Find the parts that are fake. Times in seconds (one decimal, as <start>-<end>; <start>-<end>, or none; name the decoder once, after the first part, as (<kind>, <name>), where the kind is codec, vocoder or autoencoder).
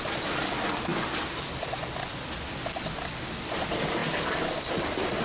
none